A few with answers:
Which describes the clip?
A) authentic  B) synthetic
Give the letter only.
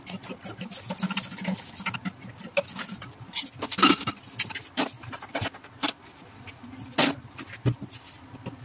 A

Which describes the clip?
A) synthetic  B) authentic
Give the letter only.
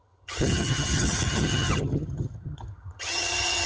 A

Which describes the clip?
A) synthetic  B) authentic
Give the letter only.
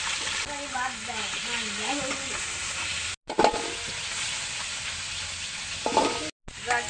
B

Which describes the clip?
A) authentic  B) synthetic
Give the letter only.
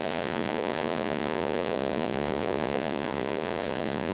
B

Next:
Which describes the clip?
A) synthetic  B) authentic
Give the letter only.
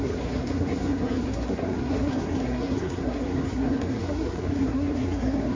A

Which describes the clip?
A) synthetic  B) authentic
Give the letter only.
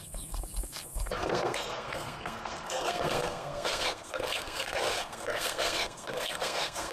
A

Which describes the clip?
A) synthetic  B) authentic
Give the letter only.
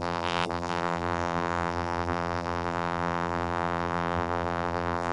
A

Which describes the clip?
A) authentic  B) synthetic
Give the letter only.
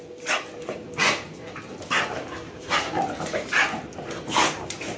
B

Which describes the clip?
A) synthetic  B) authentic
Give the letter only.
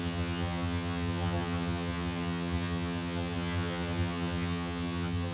A